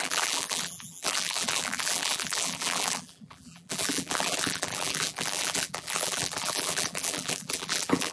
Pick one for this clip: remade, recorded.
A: remade